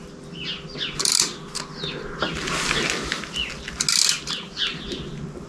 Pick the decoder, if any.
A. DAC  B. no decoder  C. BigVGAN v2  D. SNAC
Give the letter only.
B